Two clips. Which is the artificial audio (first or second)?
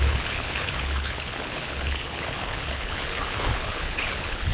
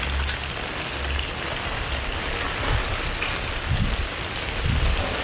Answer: first